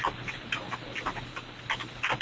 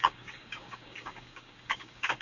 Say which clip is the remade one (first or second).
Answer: second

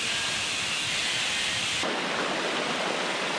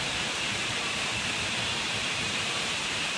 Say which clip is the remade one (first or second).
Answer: second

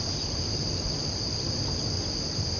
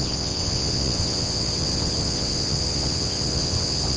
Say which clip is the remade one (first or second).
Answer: second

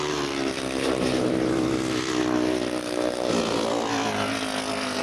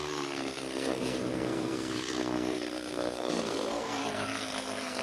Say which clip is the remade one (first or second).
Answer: second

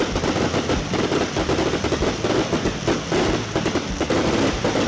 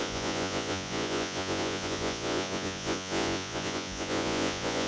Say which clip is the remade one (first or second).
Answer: second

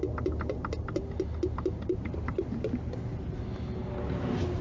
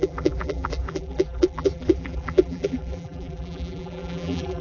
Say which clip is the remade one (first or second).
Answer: second